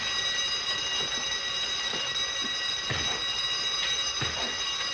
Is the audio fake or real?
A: real